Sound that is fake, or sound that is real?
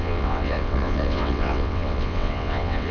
fake